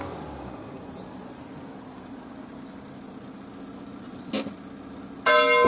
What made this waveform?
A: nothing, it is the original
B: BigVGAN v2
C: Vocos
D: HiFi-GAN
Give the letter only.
A